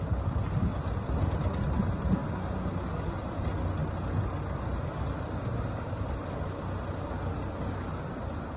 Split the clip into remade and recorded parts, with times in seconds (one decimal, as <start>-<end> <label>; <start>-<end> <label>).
0.0-8.6 recorded